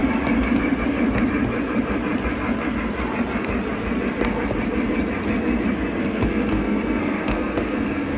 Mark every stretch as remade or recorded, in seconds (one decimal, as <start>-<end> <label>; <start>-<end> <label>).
0.0-6.0 recorded; 6.0-8.2 remade